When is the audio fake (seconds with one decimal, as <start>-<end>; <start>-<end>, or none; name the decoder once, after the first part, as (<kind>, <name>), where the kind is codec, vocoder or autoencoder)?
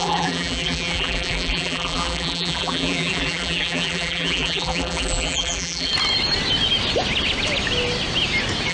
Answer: 0.0-5.9 (vocoder, BigVGAN v2)